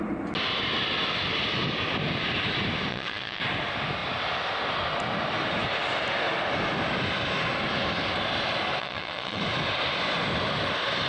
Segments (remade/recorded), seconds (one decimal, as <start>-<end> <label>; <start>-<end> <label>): 0.0-2.9 recorded; 2.9-3.4 remade; 3.4-8.8 recorded; 8.8-9.4 remade; 9.4-11.1 recorded